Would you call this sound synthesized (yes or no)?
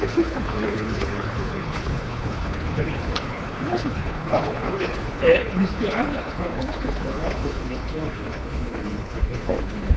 yes